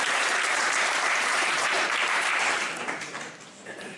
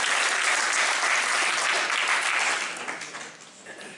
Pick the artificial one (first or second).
first